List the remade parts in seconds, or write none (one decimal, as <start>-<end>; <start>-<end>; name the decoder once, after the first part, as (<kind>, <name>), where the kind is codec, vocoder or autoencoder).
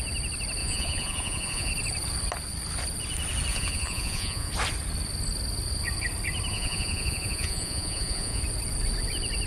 0.6-1.7 (vocoder, Vocos); 3.5-4.5; 6.5-8.4